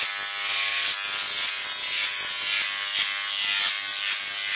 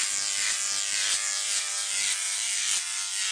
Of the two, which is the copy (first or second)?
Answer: second